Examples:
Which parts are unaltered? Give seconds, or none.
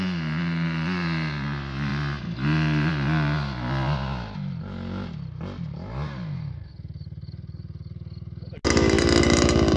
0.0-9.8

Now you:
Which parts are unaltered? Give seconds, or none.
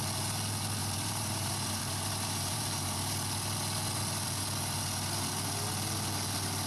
0.0-0.8; 3.0-6.7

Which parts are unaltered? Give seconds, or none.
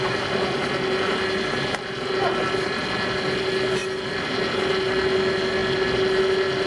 0.0-6.7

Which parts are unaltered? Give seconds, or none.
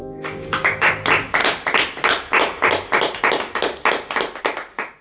0.9-5.0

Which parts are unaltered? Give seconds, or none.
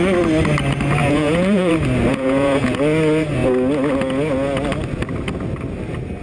0.0-1.0; 1.7-2.1; 2.8-6.2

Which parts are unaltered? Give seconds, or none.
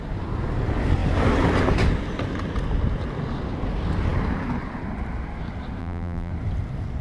0.0-5.8; 6.3-7.0